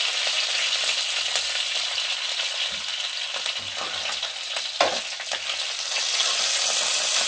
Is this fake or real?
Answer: real